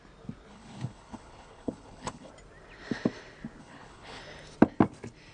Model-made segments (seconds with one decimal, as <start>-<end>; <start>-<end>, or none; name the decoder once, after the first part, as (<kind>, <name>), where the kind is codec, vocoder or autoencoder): 0.5-2.3 (codec, HILCodec); 3.6-4.2